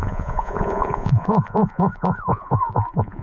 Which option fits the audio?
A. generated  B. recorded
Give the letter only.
A